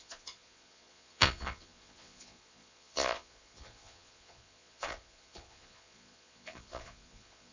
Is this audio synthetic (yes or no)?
yes